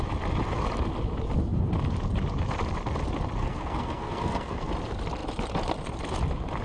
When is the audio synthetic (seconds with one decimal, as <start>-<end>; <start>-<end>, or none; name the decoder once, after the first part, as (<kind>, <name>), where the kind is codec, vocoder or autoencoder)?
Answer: 3.4-4.7 (codec, SNAC)